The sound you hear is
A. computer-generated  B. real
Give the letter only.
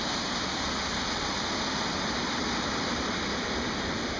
B